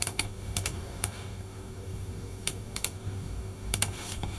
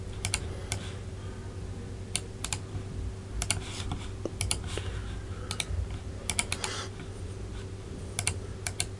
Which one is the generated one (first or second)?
first